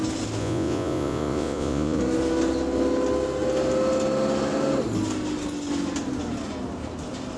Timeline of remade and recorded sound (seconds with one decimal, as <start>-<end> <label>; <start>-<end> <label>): 0.0-0.4 recorded; 0.4-2.0 remade; 2.0-7.4 recorded